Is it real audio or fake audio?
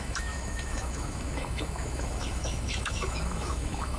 fake